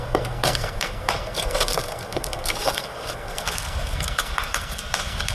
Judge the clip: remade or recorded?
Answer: remade